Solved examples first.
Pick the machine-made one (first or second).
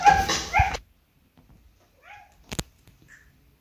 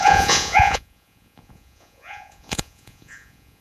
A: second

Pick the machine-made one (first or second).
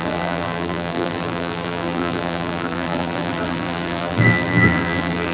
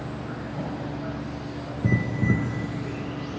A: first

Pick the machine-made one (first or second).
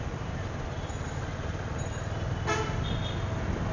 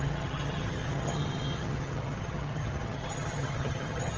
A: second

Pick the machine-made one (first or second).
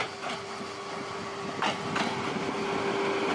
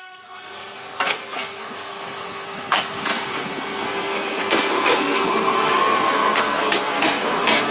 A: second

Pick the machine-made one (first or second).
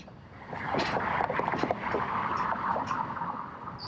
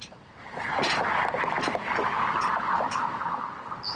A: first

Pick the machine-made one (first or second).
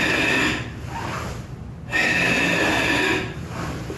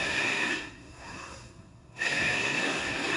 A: second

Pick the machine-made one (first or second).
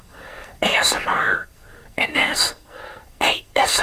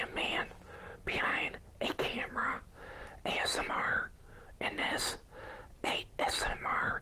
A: first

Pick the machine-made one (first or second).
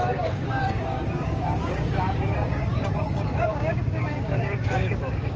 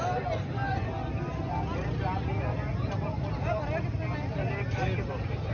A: first